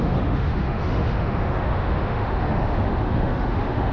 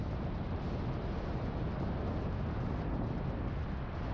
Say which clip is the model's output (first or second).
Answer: first